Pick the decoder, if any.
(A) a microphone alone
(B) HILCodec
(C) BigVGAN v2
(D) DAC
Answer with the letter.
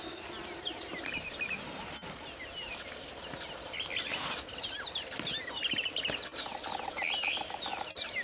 A